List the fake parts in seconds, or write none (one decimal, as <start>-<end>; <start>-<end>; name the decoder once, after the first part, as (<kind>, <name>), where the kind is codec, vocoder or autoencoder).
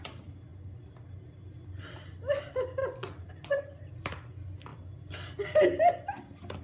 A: 2.8-3.8 (vocoder, Vocos)